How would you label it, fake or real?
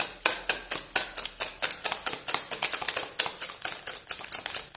real